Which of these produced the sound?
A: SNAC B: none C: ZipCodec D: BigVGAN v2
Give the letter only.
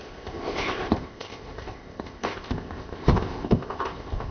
C